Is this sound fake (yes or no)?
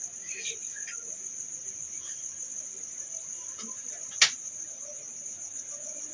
no